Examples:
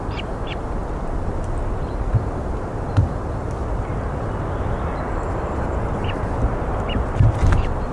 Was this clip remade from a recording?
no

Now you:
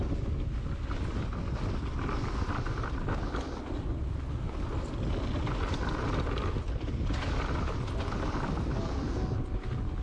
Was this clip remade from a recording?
no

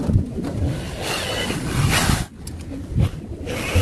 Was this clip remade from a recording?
no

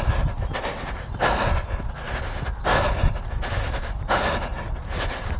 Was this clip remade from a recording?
no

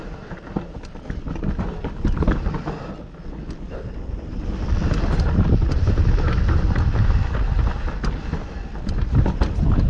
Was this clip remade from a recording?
no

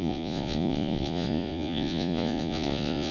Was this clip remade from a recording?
yes